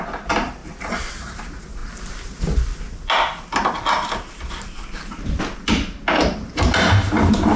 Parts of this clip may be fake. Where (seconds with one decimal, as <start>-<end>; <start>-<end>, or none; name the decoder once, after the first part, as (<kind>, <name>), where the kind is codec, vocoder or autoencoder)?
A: none

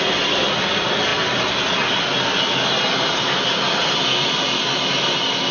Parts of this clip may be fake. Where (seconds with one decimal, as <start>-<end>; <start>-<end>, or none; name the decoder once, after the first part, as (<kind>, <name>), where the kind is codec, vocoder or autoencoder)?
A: none

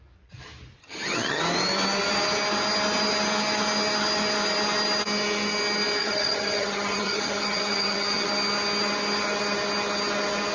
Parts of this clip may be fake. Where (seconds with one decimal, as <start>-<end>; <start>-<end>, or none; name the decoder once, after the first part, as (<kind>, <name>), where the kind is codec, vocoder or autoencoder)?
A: 0.8-1.4 (vocoder, HiFi-GAN); 6.0-8.3

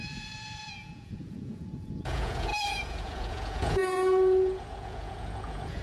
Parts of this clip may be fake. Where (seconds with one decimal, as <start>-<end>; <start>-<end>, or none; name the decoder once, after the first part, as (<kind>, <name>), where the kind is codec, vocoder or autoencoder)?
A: 0.0-5.8 (vocoder, Vocos)

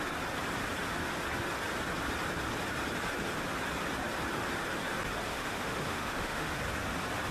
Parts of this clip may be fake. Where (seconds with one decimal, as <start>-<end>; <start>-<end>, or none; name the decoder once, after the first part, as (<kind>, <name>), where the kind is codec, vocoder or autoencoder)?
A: 5.3-6.6 (autoencoder, DAC-VAE)

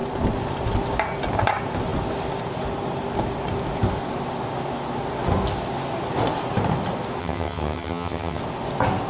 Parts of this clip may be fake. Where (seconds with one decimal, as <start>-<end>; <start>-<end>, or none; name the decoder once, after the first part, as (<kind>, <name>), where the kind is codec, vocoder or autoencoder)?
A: 7.2-8.4 (vocoder, HiFi-GAN)

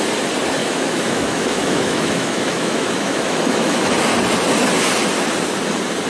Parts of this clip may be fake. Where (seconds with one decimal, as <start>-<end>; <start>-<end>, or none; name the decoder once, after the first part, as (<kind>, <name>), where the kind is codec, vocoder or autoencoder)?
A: 0.6-3.9 (autoencoder, DAC-VAE)

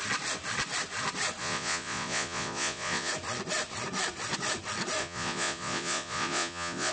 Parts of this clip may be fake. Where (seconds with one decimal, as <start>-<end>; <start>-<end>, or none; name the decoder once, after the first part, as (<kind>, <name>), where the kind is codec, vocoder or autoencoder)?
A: 1.4-3.1 (vocoder, Vocos); 5.0-6.9